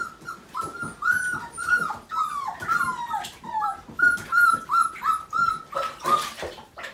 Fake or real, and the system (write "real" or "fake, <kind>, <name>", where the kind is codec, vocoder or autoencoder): real